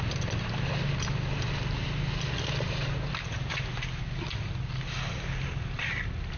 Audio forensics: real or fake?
real